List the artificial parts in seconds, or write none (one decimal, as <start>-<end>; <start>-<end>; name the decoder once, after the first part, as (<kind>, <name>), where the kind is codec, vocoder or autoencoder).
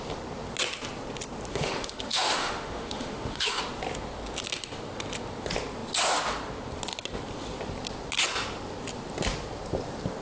1.5-3.6 (autoencoder, DAC-VAE)